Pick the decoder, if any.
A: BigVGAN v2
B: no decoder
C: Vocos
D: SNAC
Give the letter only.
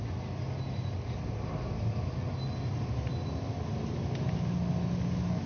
B